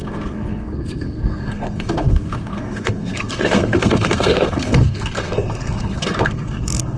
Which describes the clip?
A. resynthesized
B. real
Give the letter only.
A